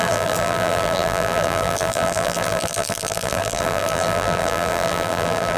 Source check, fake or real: fake